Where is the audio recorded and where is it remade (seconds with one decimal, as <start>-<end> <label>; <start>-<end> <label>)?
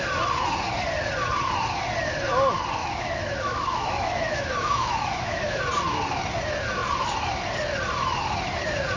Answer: 0.0-2.8 recorded; 2.8-5.6 remade; 5.6-9.0 recorded